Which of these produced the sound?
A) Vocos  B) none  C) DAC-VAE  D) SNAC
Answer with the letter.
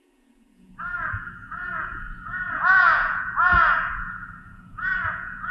A